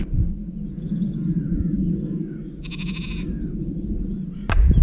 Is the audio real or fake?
real